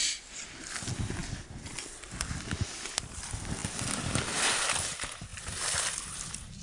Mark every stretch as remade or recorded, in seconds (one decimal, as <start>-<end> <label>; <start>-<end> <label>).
0.0-6.6 recorded